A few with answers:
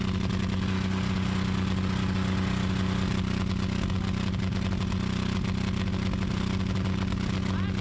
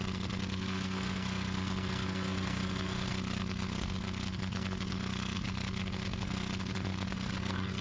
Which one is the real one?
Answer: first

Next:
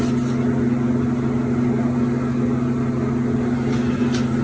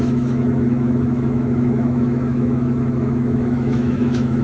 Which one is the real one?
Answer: first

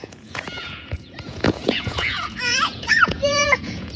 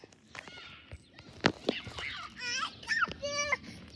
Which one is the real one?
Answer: second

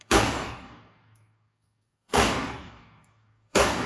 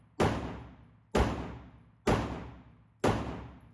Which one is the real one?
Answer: second